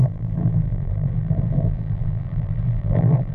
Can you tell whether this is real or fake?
fake